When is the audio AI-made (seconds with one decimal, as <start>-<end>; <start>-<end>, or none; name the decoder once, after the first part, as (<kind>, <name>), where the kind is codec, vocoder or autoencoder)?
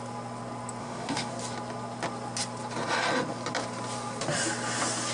0.8-1.3 (autoencoder, DAC-VAE)